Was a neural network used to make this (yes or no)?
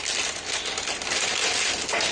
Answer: no